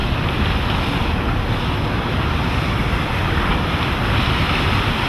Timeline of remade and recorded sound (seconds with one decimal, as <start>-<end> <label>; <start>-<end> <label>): 0.0-5.1 recorded